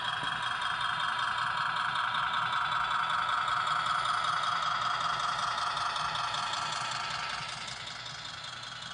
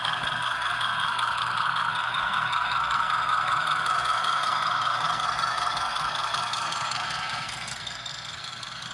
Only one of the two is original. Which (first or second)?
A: first